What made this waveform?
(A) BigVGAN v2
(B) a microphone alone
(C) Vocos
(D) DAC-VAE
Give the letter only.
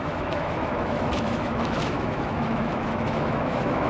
D